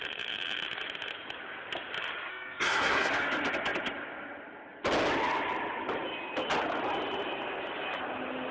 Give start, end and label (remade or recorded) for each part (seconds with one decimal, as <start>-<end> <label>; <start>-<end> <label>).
0.0-2.3 recorded; 2.3-3.1 remade; 3.1-8.5 recorded